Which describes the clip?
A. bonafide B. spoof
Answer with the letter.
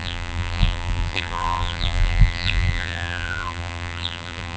B